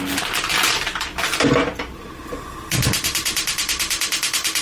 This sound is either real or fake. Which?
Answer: real